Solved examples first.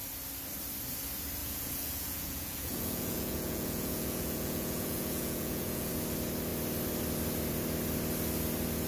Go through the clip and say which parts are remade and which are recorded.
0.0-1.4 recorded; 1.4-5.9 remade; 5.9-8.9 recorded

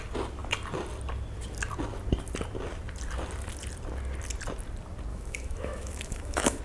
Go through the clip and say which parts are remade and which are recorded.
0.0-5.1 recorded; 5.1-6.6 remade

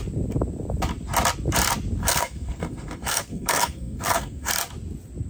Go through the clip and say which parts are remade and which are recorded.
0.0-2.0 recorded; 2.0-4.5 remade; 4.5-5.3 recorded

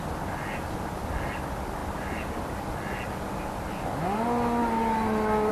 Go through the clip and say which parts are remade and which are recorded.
0.0-5.5 recorded

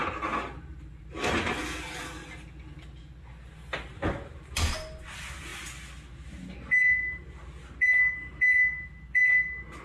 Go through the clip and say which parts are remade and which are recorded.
0.0-0.7 recorded; 0.7-1.6 remade; 1.6-9.8 recorded